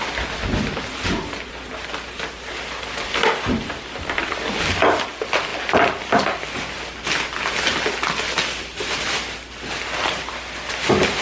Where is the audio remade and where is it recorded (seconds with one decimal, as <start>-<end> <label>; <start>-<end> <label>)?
0.0-11.2 recorded